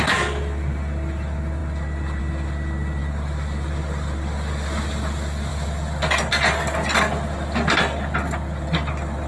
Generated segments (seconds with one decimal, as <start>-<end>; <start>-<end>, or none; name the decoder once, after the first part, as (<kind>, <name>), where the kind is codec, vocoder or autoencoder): none